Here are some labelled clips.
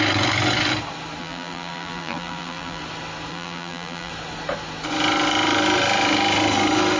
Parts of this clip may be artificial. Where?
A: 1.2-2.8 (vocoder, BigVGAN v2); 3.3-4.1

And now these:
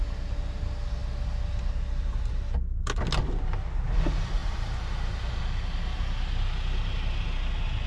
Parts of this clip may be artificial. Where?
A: 4.4-5.4 (vocoder, BigVGAN v2)

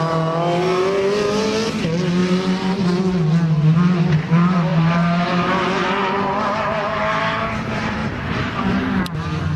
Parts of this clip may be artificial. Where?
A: 2.2-3.0 (vocoder, BigVGAN v2); 4.7-7.2; 8.0-9.0

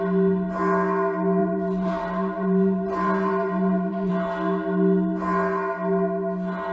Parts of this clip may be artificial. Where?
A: 1.4-4.1 (vocoder, BigVGAN v2)

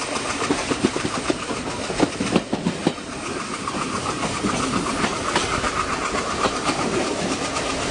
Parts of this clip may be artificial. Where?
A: 0.0-1.7 (vocoder, BigVGAN v2); 2.8-7.5

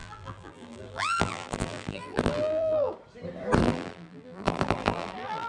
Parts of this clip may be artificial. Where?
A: 0.0-2.9 (vocoder, BigVGAN v2); 3.6-5.5

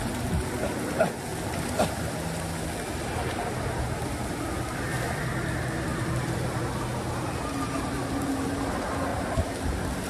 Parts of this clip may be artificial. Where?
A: 9.1-10.1 (vocoder, BigVGAN v2)

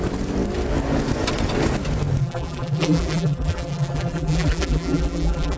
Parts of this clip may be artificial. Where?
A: 2.2-5.6 (vocoder, BigVGAN v2)